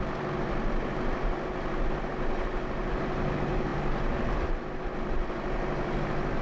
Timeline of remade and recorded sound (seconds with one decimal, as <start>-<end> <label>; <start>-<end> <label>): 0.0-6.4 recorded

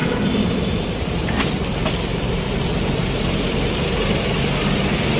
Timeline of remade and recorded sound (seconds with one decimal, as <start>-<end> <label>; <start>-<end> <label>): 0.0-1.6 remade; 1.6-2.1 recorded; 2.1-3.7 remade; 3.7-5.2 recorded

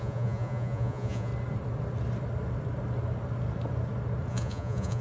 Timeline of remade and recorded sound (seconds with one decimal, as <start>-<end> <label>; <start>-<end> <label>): 0.0-1.3 remade; 1.3-4.3 recorded; 4.3-5.0 remade